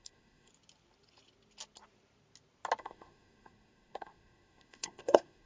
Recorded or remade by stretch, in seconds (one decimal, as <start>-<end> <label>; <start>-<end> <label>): 0.0-0.5 remade; 0.5-2.8 recorded; 2.8-5.5 remade